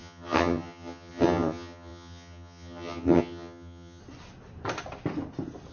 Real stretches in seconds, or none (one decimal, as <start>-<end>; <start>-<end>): 4.0-5.7